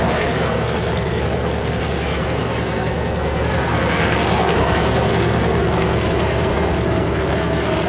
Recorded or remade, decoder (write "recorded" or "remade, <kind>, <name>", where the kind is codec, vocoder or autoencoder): remade, codec, SNAC